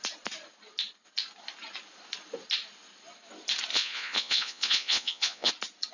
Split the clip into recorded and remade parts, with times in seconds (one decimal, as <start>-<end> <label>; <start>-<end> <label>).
0.0-3.7 recorded; 3.7-5.5 remade; 5.5-5.9 recorded